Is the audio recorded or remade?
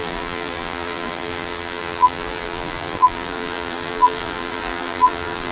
remade